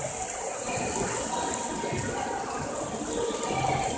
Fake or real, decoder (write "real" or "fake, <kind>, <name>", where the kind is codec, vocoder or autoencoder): real